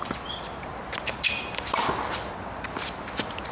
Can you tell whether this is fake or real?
real